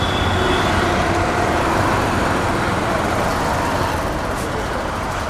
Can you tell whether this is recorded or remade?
recorded